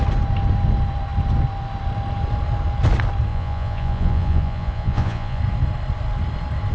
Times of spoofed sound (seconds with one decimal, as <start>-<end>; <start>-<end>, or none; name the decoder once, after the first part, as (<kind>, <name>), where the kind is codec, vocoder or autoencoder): 3.3-5.4 (vocoder, Vocos)